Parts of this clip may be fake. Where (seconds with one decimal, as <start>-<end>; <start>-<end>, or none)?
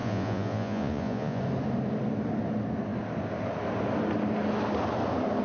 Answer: 0.0-1.4